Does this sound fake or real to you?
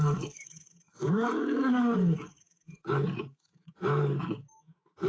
fake